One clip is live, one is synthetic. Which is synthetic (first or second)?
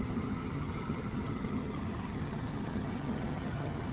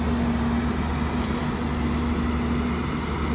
first